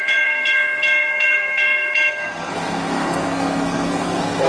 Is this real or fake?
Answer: fake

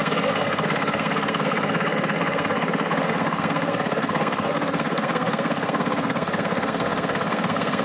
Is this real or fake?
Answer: fake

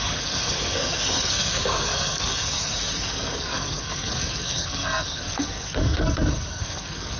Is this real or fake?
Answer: fake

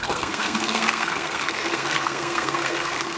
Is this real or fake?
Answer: fake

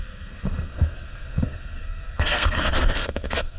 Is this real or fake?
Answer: fake